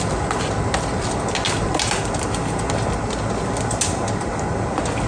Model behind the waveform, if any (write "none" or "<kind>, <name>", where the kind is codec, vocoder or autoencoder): none